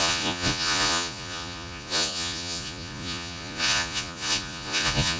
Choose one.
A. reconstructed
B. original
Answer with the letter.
A